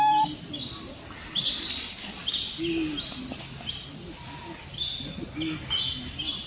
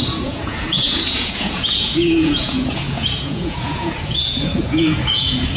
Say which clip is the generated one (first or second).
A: second